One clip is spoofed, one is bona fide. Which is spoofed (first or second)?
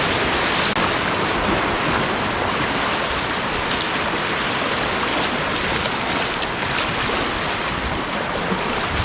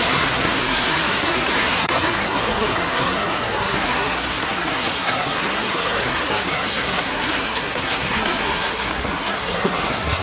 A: second